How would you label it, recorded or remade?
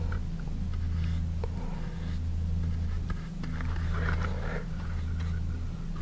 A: recorded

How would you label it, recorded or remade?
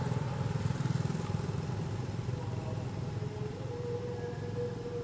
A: recorded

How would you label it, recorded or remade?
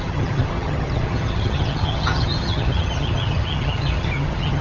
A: remade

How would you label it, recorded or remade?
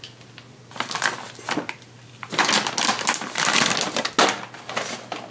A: recorded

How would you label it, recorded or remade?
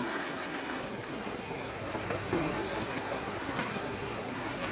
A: remade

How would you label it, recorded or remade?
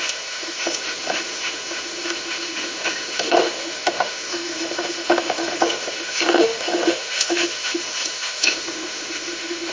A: remade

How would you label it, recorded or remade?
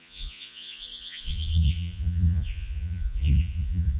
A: remade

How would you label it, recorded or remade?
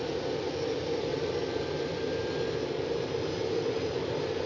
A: recorded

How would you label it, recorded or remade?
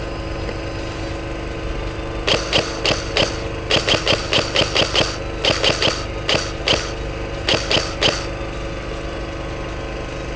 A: recorded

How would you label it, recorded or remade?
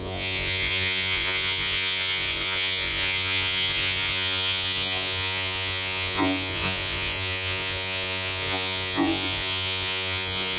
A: remade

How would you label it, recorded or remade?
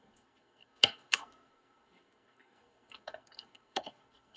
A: remade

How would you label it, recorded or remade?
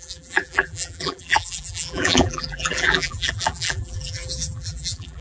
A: remade